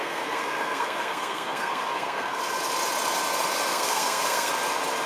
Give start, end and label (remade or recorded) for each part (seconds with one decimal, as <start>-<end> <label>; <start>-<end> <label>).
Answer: 0.0-2.4 remade; 2.4-3.7 recorded; 3.7-4.5 remade; 4.5-5.1 recorded